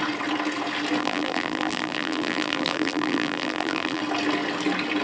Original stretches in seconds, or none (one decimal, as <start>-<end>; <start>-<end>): 0.0-1.0; 4.0-5.0